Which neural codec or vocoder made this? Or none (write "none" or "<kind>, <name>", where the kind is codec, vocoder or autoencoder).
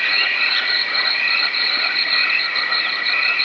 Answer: vocoder, Vocos